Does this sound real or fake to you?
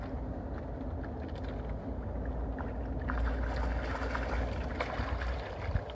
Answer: real